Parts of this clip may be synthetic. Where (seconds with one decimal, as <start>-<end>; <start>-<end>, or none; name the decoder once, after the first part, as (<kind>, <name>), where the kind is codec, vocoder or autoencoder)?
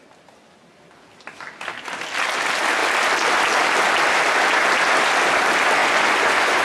5.8-6.6 (vocoder, Vocos)